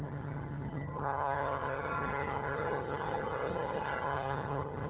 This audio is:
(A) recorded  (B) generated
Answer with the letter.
B